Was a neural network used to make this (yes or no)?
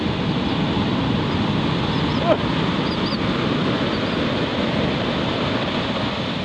no